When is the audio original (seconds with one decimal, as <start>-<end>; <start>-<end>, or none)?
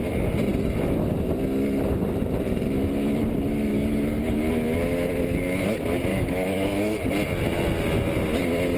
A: 0.0-3.7; 4.5-6.1; 7.0-8.8